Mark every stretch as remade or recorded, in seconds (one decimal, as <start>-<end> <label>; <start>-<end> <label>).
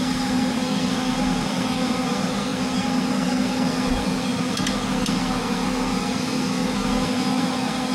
0.0-7.9 remade